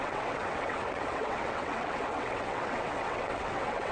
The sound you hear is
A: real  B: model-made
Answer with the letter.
B